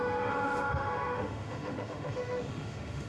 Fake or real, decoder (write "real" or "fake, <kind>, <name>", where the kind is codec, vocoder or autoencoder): fake, autoencoder, DAC-VAE